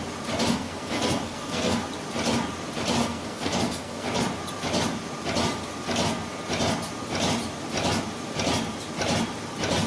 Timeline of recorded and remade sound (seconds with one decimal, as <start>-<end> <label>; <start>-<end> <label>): 0.0-0.5 recorded; 0.5-1.9 remade; 1.9-3.0 recorded; 3.0-4.2 remade; 4.2-9.9 recorded